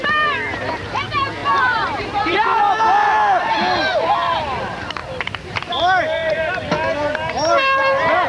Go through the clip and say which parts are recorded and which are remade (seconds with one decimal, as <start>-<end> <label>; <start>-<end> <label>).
0.0-1.4 recorded; 1.4-2.8 remade; 2.8-5.0 recorded; 5.0-5.8 remade; 5.8-6.2 recorded; 6.2-6.7 remade; 6.7-8.3 recorded